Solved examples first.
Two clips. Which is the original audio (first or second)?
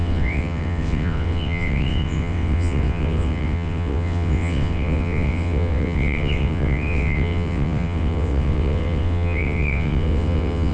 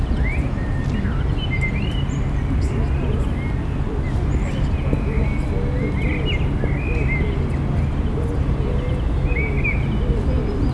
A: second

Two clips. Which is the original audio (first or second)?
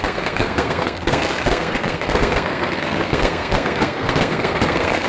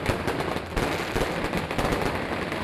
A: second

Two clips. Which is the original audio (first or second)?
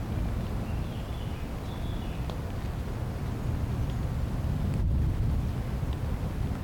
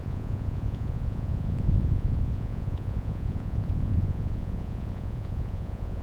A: first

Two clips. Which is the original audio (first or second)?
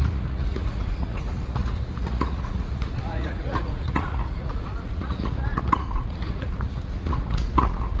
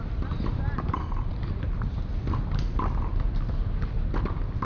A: second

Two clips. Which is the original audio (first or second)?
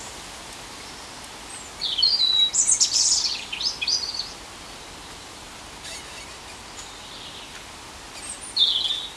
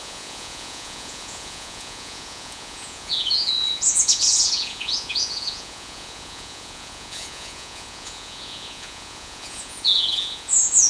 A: first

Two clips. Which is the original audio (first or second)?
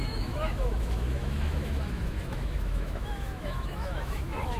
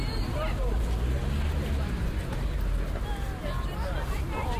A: second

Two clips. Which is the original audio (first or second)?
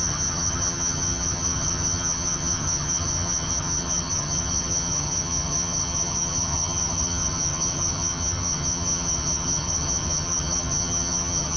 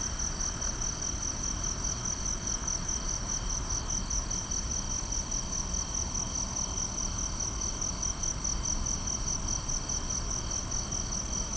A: second